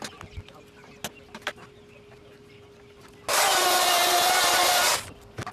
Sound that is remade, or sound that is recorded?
recorded